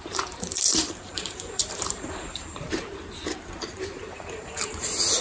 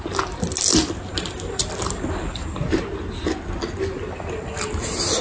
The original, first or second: second